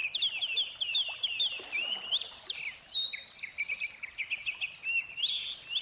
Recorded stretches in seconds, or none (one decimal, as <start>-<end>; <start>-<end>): 0.0-5.8